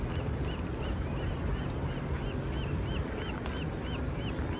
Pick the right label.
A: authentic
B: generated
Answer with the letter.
A